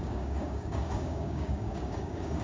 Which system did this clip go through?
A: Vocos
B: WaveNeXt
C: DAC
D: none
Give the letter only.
C